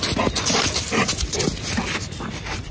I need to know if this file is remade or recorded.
recorded